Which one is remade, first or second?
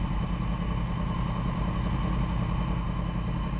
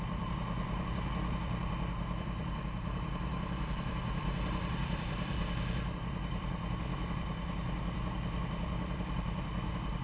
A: second